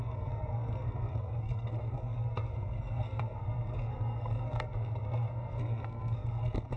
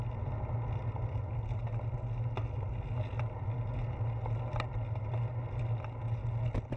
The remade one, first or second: first